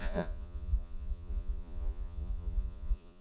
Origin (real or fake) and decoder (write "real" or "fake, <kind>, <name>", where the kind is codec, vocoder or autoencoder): fake, vocoder, Vocos